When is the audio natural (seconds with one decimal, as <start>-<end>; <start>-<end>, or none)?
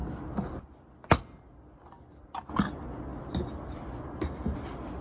0.0-5.0